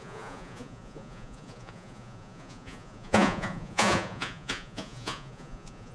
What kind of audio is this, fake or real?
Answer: fake